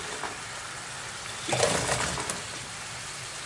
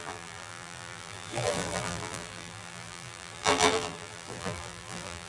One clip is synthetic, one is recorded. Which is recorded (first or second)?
first